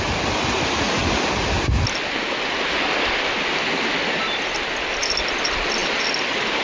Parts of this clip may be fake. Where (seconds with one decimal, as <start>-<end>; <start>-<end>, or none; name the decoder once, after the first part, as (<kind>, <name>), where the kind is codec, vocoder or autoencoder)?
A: none